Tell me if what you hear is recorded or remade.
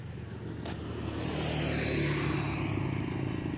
recorded